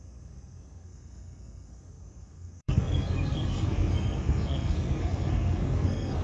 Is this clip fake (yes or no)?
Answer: yes